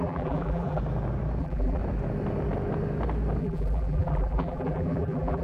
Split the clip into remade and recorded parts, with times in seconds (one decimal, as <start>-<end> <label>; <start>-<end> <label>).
0.0-0.8 remade; 0.8-1.4 recorded; 1.4-1.8 remade; 1.8-3.4 recorded; 3.4-5.4 remade

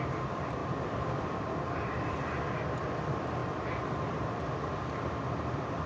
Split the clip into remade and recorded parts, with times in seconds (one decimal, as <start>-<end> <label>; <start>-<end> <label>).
0.0-0.6 recorded; 0.6-2.5 remade; 2.5-3.4 recorded; 3.4-4.4 remade; 4.4-5.9 recorded

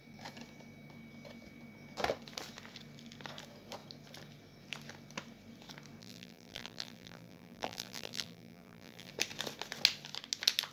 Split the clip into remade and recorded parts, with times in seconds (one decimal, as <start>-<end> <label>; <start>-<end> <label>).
0.0-6.0 recorded; 6.0-9.1 remade; 9.1-10.7 recorded

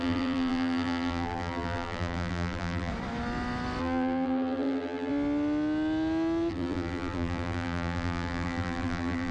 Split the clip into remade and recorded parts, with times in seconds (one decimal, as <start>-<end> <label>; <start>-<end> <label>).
0.0-2.9 remade; 2.9-3.8 recorded; 3.8-5.1 remade; 5.1-6.5 recorded; 6.5-9.3 remade

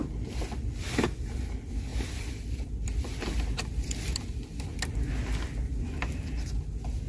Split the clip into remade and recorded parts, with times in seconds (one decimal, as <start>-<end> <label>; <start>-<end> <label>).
0.0-1.9 recorded; 1.9-4.6 remade; 4.6-7.1 recorded

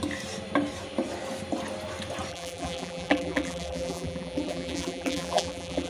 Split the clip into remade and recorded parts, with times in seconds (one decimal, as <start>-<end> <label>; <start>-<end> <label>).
0.0-2.3 recorded; 2.3-5.9 remade

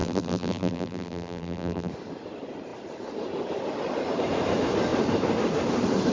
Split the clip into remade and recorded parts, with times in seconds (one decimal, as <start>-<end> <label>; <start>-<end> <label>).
0.0-1.9 remade; 1.9-6.1 recorded

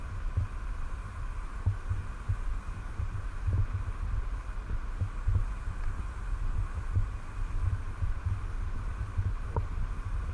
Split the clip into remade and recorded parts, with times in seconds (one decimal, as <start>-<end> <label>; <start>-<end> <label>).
0.0-1.4 remade; 1.4-10.3 recorded